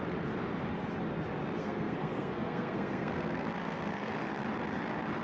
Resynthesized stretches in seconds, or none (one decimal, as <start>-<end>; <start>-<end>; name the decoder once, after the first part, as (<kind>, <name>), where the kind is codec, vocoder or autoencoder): 1.6-4.1 (codec, SNAC)